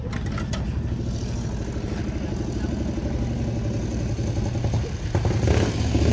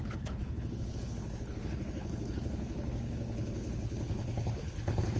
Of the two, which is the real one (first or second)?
first